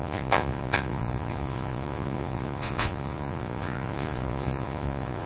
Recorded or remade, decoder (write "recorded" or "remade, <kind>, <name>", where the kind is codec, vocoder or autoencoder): remade, vocoder, Vocos